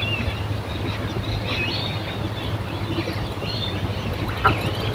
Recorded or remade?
recorded